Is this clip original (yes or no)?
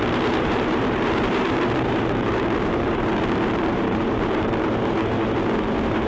no